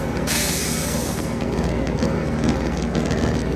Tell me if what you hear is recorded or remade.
remade